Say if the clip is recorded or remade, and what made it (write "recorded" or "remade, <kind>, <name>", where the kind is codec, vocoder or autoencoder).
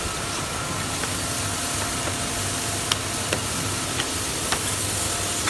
recorded